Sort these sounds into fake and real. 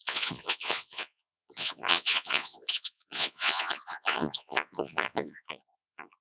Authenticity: fake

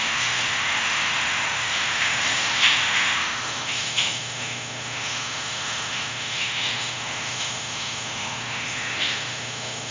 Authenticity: fake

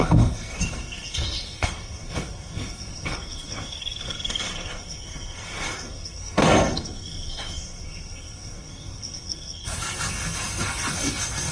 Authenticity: fake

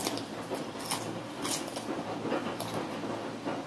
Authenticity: real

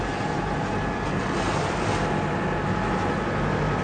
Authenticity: real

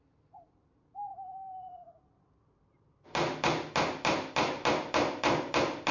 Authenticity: real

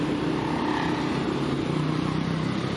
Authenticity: fake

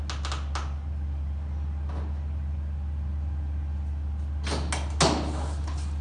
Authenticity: real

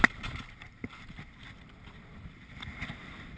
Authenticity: real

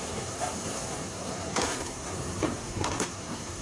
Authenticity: fake